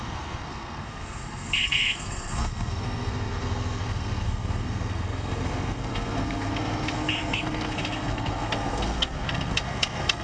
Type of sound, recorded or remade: remade